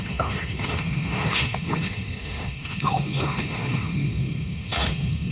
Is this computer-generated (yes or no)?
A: yes